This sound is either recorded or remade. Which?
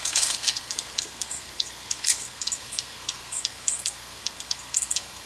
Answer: remade